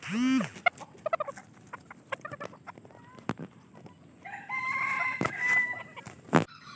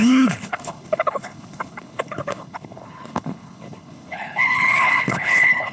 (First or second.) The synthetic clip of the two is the second